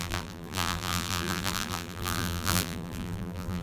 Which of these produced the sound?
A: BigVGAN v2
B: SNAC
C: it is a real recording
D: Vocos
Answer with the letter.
A